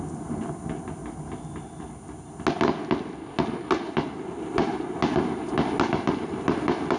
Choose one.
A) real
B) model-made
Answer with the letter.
A